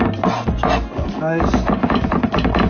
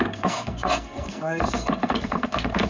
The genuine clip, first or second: first